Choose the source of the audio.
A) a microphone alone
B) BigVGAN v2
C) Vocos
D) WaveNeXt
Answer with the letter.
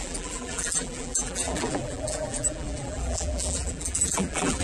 B